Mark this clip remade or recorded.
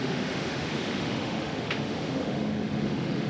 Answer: remade